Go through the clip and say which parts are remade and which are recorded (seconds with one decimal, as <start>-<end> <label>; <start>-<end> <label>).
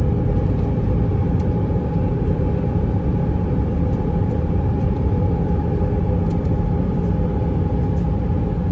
0.0-1.2 recorded; 1.2-5.6 remade; 5.6-6.3 recorded; 6.3-7.2 remade; 7.2-8.7 recorded